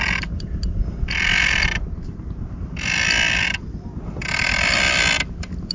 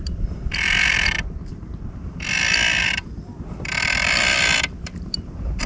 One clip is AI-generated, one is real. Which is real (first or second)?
first